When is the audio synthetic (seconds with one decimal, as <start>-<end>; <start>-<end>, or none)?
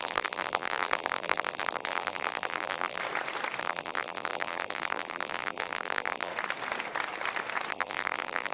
0.0-3.0; 3.6-6.3; 7.7-8.5